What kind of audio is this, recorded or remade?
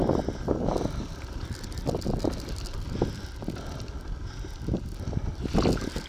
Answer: recorded